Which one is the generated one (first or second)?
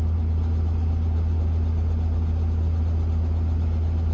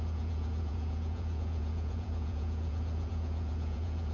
second